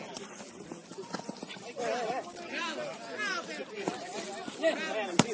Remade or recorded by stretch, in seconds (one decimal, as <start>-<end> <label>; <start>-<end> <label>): 0.0-5.3 recorded